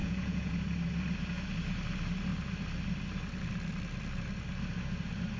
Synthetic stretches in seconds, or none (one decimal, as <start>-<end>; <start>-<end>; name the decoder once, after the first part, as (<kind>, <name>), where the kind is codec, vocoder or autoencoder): 0.0-0.5 (vocoder, Vocos)